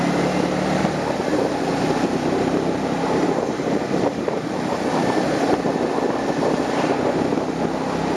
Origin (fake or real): real